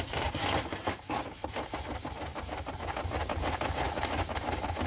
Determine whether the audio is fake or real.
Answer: real